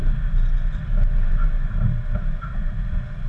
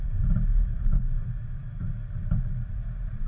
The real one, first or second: first